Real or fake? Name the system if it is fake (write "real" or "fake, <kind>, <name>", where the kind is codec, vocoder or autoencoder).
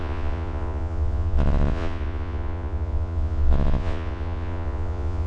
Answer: fake, vocoder, Vocos